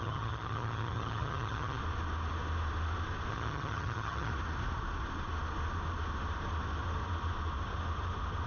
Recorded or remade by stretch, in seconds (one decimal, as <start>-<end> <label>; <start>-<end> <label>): 0.0-1.8 remade; 1.8-3.3 recorded; 3.3-4.3 remade; 4.3-8.5 recorded